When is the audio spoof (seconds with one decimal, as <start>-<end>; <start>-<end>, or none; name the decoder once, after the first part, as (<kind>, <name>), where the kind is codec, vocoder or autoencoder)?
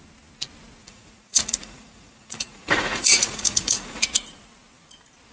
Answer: 0.8-4.0 (vocoder, Vocos)